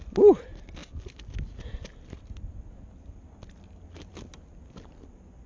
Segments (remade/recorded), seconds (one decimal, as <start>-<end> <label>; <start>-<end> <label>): 0.0-5.5 recorded